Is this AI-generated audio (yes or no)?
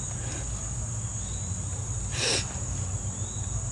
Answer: no